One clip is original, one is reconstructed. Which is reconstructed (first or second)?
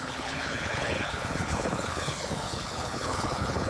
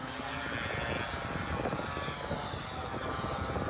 first